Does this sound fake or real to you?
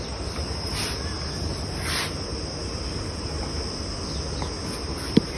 real